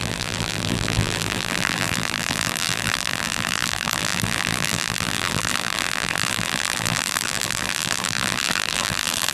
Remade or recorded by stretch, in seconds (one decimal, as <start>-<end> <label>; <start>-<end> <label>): 0.0-9.3 remade